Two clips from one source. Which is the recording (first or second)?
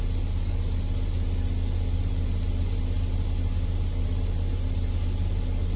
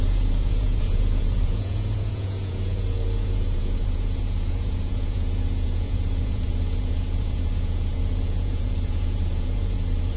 first